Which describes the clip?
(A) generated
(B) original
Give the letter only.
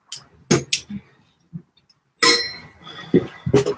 B